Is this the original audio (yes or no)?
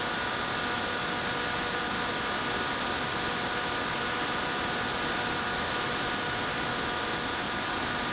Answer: yes